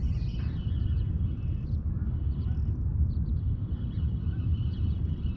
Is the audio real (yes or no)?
no